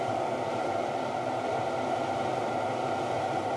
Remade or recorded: recorded